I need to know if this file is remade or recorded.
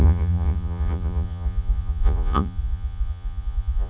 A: remade